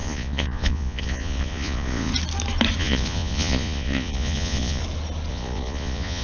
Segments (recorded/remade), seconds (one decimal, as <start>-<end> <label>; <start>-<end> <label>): 0.0-2.1 remade; 2.1-2.8 recorded; 2.8-4.8 remade; 4.8-5.3 recorded; 5.3-6.2 remade